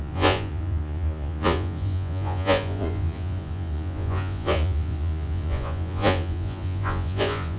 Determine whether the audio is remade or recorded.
remade